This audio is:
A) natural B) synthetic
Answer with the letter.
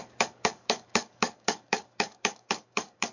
B